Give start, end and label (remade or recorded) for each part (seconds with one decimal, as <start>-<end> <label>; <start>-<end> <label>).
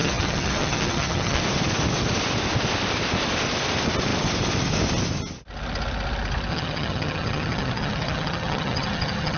0.0-1.4 remade; 1.4-6.5 recorded; 6.5-9.4 remade